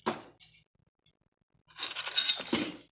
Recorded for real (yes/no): yes